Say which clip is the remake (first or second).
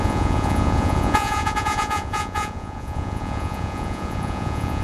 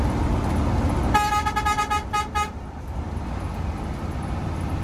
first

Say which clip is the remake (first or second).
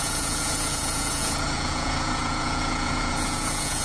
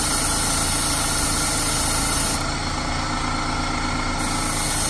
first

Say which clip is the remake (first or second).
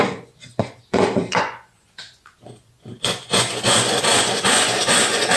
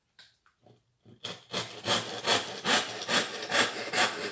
first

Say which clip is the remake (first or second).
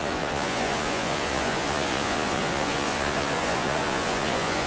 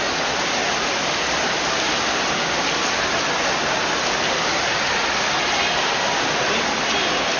first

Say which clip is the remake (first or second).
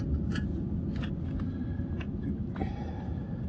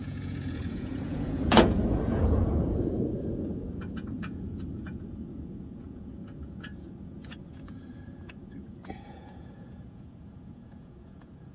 second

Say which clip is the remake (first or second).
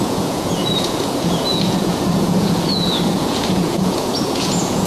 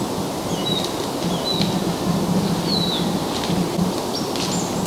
first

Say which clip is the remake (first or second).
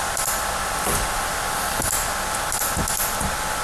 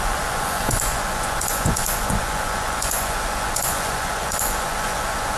second